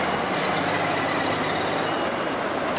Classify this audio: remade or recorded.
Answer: recorded